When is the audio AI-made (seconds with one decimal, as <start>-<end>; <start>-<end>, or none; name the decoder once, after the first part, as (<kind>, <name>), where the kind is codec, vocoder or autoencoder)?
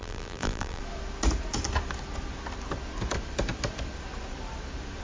0.0-0.8 (vocoder, BigVGAN v2)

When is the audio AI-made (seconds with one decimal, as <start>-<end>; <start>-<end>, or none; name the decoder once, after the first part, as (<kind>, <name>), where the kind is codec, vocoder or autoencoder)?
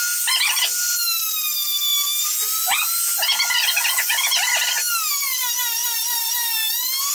1.9-4.5 (vocoder, BigVGAN v2); 5.8-7.1